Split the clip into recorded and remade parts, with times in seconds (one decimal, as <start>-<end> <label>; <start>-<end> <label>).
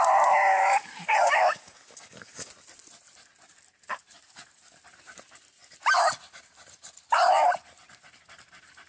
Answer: 0.0-0.5 recorded; 0.5-2.5 remade; 2.5-8.9 recorded